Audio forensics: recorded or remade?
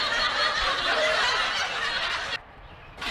remade